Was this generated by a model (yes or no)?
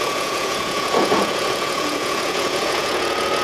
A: yes